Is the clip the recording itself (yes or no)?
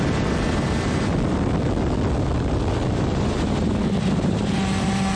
yes